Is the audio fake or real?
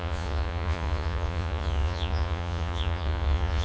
fake